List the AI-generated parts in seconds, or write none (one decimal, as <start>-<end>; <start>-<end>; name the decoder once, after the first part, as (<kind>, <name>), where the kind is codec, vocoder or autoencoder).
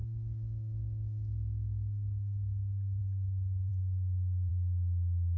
0.0-3.0 (autoencoder, DAC-VAE)